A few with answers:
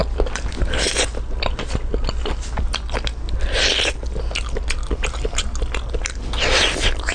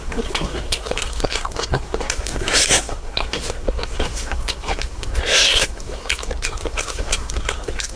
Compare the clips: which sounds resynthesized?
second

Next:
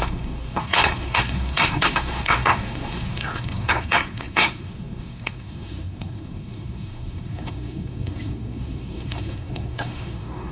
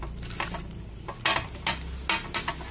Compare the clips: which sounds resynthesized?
first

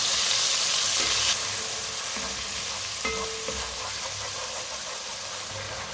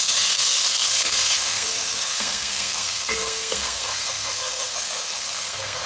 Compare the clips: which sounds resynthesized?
second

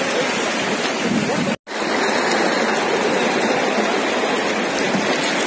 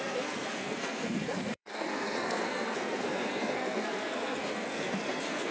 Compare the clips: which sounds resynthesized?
second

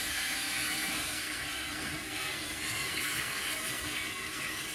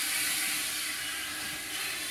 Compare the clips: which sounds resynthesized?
first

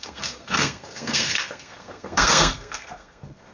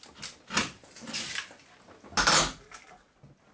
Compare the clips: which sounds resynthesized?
first